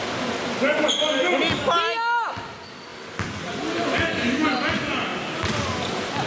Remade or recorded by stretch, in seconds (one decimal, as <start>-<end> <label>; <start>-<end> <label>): 0.0-6.3 recorded